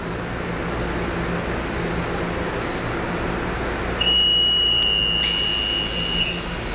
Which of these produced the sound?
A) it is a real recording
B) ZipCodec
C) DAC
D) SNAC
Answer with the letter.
A